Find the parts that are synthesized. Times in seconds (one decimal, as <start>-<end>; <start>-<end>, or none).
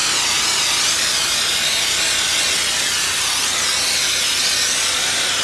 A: none